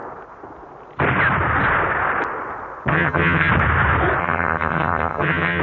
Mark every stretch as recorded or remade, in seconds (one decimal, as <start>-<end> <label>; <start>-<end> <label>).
0.0-2.9 recorded; 2.9-3.5 remade; 3.5-4.2 recorded; 4.2-5.6 remade

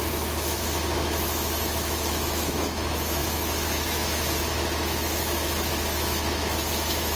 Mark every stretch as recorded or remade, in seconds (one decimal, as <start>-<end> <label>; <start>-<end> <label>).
0.0-7.2 remade

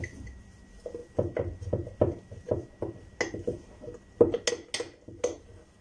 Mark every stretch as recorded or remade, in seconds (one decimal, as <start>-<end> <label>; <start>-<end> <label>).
0.0-5.8 recorded

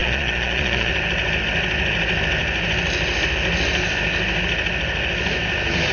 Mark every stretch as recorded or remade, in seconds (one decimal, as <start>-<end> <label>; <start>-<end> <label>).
0.0-0.9 remade; 0.9-5.9 recorded

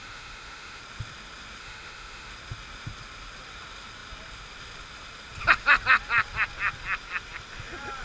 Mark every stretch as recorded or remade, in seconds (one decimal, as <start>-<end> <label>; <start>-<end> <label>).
0.0-0.8 remade; 0.8-1.6 recorded; 1.6-2.3 remade; 2.3-8.0 recorded

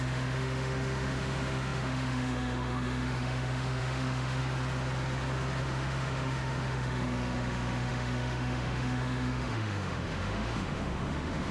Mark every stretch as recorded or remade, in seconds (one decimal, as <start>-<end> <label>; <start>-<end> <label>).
0.0-4.4 remade; 4.4-5.6 recorded; 5.6-11.5 remade

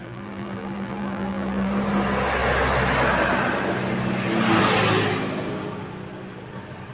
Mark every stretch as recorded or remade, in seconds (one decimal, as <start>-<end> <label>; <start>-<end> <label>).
0.0-1.7 remade; 1.7-6.9 recorded

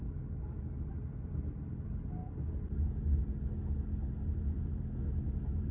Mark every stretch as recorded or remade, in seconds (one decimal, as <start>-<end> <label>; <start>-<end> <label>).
0.0-5.7 recorded